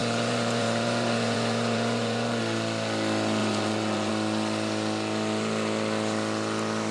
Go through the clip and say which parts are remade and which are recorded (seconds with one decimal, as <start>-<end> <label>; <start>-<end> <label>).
0.0-2.4 remade; 2.4-3.4 recorded; 3.4-4.1 remade; 4.1-6.9 recorded